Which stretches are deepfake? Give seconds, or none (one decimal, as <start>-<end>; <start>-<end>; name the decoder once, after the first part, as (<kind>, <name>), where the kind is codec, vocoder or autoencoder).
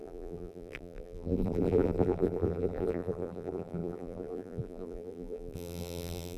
0.0-6.4 (vocoder, BigVGAN v2)